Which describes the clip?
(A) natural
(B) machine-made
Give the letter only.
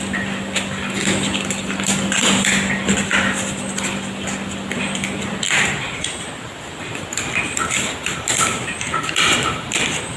B